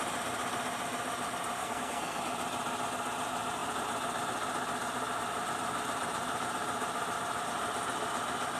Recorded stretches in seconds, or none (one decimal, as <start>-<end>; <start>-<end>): 0.0-1.6; 2.2-8.6